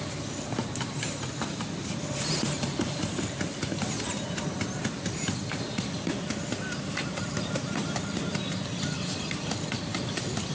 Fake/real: real